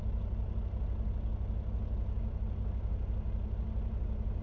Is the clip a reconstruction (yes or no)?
no